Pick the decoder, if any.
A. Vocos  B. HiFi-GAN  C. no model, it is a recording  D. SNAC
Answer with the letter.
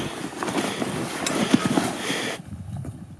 C